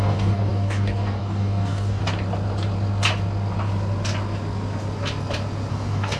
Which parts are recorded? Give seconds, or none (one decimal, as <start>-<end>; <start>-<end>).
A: 2.0-5.7